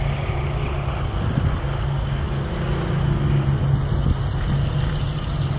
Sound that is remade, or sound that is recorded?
recorded